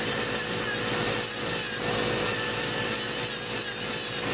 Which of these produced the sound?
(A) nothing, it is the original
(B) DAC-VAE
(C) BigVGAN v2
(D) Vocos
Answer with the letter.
A